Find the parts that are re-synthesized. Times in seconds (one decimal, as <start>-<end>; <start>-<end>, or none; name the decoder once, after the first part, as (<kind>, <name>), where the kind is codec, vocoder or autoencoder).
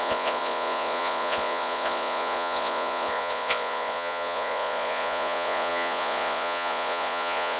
0.0-7.6 (vocoder, Vocos)